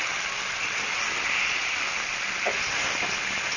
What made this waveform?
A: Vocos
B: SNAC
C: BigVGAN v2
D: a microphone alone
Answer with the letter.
D